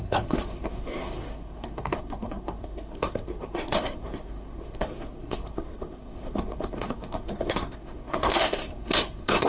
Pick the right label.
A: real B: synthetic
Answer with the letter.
B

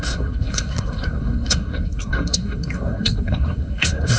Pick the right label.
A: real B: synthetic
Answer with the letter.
B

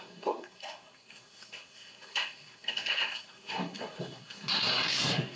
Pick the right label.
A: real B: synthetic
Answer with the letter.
B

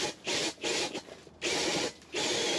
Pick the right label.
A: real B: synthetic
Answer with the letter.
A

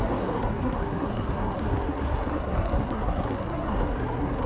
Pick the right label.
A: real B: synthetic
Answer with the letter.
B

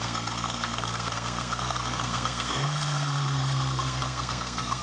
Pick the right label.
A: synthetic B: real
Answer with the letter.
A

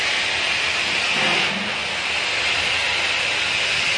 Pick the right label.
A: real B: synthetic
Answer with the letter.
A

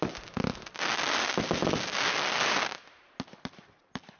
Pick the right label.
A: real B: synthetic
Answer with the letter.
A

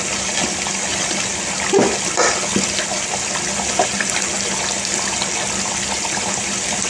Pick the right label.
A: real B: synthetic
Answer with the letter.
A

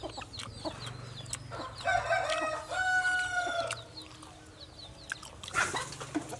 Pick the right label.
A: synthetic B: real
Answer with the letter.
B